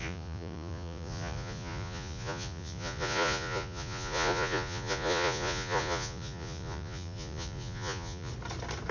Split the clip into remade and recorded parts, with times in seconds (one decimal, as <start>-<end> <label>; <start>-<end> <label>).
0.0-8.3 remade; 8.3-8.9 recorded